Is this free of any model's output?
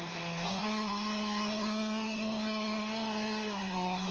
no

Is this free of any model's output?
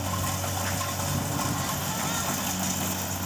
yes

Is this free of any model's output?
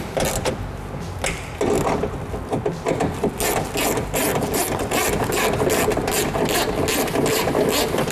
yes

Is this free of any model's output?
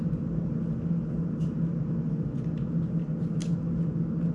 yes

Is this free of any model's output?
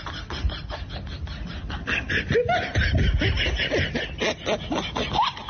yes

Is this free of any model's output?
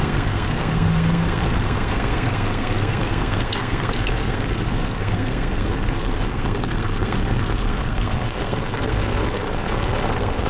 no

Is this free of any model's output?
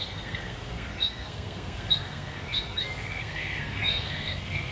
no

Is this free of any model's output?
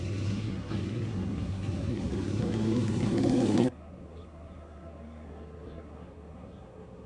no